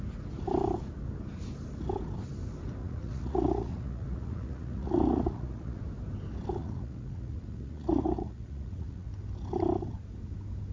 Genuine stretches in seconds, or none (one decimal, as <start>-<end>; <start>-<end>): 0.0-2.8; 5.8-6.6; 9.1-10.7